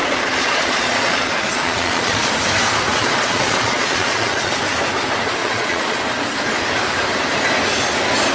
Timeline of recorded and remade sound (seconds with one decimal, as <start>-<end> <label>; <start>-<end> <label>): 0.0-2.3 remade; 2.3-2.9 recorded; 2.9-4.6 remade; 4.6-5.4 recorded; 5.4-6.0 remade; 6.0-8.3 recorded

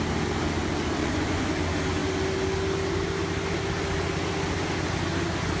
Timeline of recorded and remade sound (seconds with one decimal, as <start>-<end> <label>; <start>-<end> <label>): 0.0-1.0 recorded; 1.0-1.5 remade; 1.5-5.6 recorded

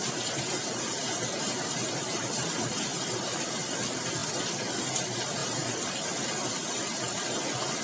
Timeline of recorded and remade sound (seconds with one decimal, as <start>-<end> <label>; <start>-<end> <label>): 0.0-7.8 recorded

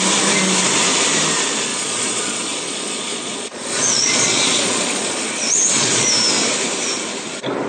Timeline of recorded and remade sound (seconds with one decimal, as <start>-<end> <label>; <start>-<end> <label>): 0.0-1.7 recorded; 1.7-6.1 remade; 6.1-7.7 recorded

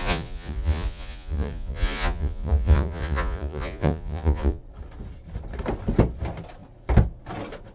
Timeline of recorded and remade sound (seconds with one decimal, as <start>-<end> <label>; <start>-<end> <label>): 0.0-4.6 remade; 4.6-7.7 recorded